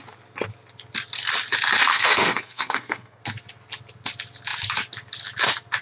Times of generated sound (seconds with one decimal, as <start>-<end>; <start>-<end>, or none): 1.9-3.2